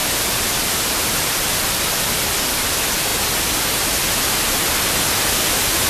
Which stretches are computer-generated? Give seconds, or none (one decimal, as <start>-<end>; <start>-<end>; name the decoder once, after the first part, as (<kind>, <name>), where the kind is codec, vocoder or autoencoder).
none